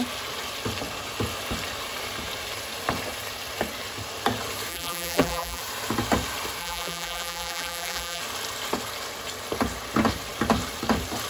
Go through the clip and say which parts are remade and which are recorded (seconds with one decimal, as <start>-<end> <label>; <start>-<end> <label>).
0.0-4.7 recorded; 4.7-5.6 remade; 5.6-6.6 recorded; 6.6-8.2 remade; 8.2-11.3 recorded

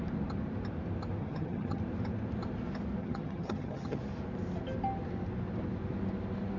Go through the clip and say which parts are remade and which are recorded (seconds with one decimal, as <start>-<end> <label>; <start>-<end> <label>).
0.0-1.2 recorded; 1.2-1.8 remade; 1.8-3.0 recorded; 3.0-4.0 remade; 4.0-6.6 recorded

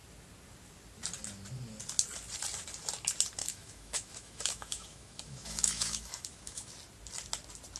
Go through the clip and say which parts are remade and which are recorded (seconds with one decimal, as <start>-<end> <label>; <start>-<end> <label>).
0.0-3.4 recorded; 3.4-6.7 remade; 6.7-7.8 recorded

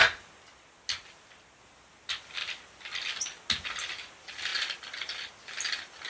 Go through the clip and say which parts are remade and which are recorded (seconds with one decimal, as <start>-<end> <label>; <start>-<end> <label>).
0.0-6.1 recorded

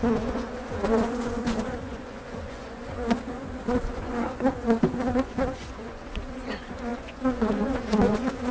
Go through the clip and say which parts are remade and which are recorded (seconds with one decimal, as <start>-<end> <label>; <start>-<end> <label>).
0.0-8.5 remade

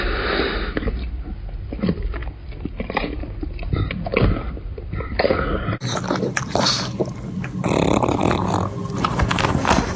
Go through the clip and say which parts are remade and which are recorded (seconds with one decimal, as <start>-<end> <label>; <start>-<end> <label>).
0.0-10.0 recorded

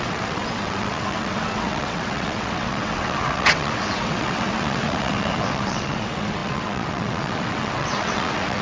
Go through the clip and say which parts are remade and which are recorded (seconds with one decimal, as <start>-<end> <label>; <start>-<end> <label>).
0.0-8.6 remade